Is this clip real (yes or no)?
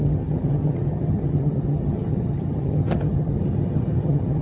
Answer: no